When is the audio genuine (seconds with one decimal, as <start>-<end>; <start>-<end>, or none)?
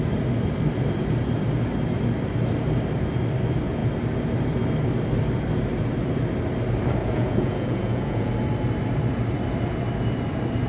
0.0-7.0; 8.3-10.7